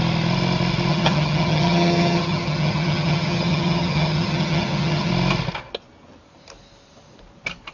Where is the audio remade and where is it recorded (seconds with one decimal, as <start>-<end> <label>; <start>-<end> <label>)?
0.0-0.9 recorded; 0.9-5.1 remade; 5.1-7.7 recorded